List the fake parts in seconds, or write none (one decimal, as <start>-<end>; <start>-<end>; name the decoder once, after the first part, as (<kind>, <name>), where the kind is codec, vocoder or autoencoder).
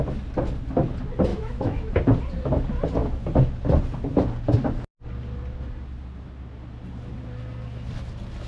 1.3-1.9 (autoencoder, DAC-VAE)